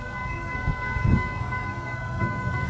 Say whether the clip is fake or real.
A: fake